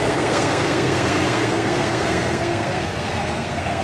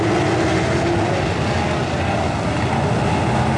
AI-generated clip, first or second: first